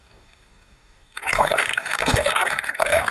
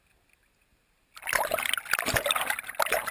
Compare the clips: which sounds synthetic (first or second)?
first